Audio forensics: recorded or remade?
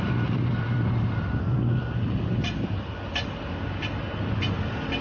recorded